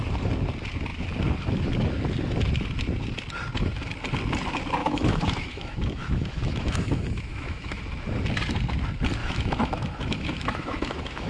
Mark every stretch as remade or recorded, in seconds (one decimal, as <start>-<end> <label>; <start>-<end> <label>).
0.0-4.8 recorded; 4.8-7.8 remade; 7.8-9.2 recorded; 9.2-11.3 remade